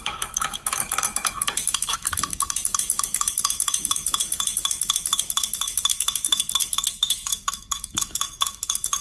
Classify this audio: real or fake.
fake